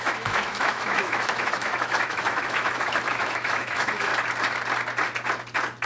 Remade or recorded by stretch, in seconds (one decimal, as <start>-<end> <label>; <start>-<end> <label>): 0.0-4.1 remade; 4.1-5.9 recorded